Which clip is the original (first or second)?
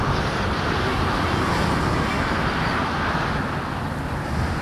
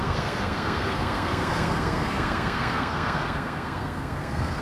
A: first